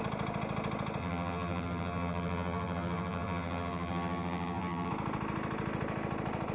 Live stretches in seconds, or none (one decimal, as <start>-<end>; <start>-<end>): 0.0-1.0; 4.9-6.5